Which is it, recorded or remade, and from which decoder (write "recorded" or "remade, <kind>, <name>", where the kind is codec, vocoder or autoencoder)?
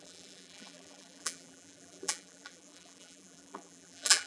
remade, vocoder, BigVGAN v2